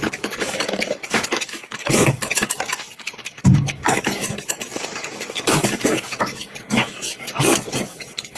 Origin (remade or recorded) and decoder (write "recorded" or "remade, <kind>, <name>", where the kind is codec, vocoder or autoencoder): remade, codec, DAC